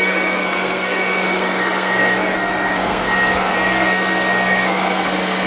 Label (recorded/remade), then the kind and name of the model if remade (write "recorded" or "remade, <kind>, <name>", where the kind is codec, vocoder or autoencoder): remade, codec, SNAC